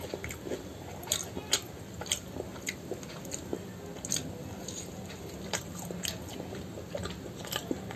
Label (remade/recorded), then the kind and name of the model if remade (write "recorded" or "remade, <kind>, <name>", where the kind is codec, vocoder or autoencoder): recorded